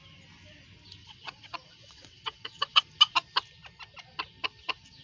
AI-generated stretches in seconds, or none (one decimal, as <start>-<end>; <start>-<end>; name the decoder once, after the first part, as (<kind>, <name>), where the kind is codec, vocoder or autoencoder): 1.0-2.8 (vocoder, WaveNeXt)